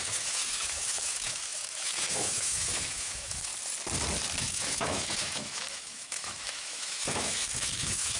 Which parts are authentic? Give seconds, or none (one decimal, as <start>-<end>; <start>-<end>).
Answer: 3.5-4.4